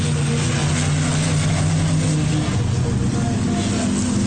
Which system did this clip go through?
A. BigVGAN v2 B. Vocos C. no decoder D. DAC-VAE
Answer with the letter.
C